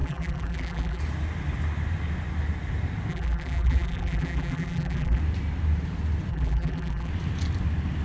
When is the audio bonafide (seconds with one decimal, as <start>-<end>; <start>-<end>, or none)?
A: 1.0-3.1; 5.2-6.3; 7.1-8.0